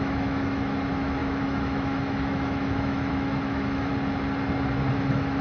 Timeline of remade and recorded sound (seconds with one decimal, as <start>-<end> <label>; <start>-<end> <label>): 0.0-3.9 remade; 3.9-4.9 recorded; 4.9-5.4 remade